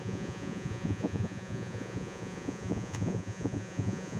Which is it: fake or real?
fake